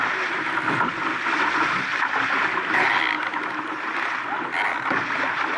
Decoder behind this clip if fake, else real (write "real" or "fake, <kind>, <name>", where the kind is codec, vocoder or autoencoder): fake, vocoder, BigVGAN v2